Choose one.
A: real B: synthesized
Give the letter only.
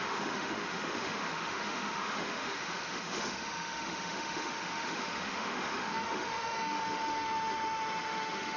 B